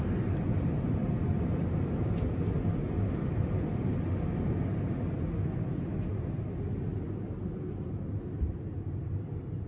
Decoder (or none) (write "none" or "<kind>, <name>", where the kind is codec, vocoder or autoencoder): none